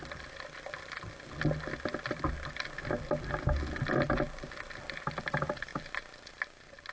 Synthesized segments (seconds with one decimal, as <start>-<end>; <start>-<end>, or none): none